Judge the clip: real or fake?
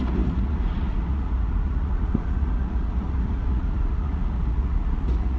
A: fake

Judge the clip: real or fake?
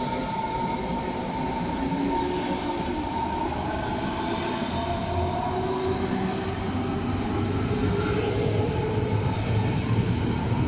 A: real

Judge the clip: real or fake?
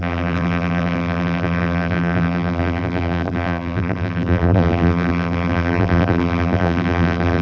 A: fake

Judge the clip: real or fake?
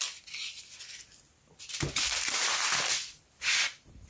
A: real